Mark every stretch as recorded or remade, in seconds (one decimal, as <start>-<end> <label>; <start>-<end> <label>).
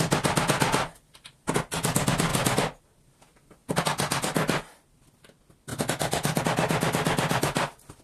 0.0-8.0 recorded